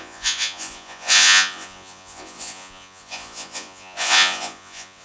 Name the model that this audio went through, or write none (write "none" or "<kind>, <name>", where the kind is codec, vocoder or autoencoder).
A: vocoder, Vocos